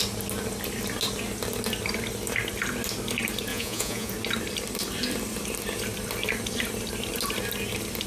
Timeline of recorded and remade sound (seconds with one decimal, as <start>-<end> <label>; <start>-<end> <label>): 0.0-3.5 recorded; 3.5-4.1 remade; 4.1-8.1 recorded